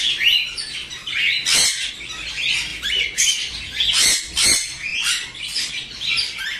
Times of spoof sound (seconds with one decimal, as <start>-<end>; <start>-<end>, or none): 2.7-4.2; 4.9-5.7